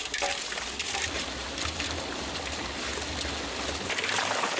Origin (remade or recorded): recorded